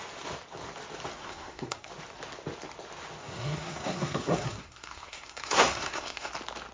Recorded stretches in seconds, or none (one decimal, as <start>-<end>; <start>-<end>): 0.0-1.2; 1.9-3.2; 6.3-6.7